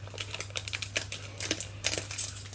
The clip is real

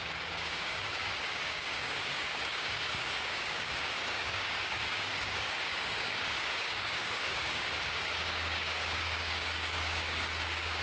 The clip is fake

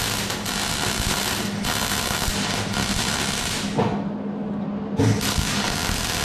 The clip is real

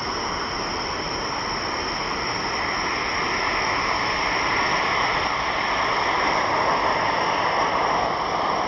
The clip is real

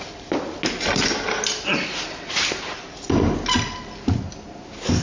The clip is real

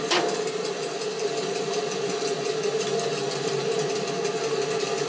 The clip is real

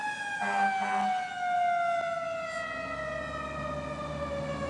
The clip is real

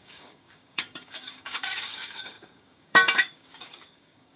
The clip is fake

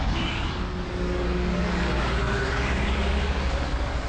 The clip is fake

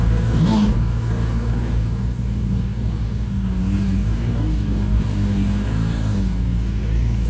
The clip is fake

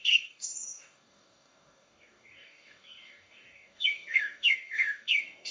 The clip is fake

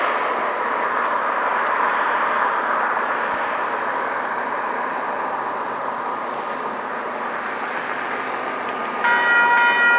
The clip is real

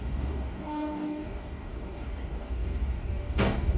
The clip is fake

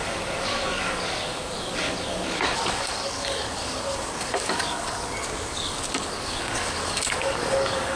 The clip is fake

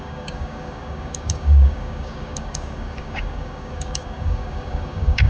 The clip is fake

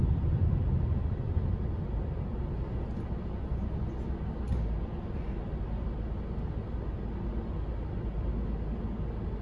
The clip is real